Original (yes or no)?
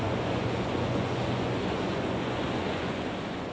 no